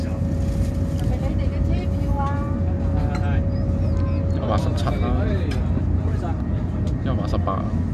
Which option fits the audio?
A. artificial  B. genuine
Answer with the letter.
B